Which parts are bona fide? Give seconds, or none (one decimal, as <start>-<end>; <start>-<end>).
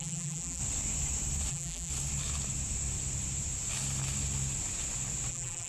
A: 0.6-1.5; 1.9-5.3